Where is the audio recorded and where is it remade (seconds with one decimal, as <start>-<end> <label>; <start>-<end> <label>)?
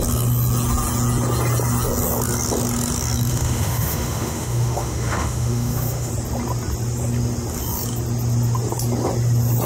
0.0-3.3 recorded; 3.3-6.1 remade; 6.1-9.7 recorded